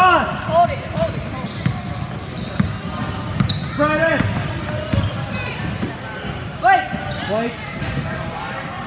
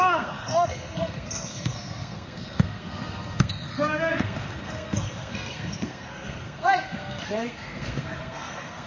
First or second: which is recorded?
first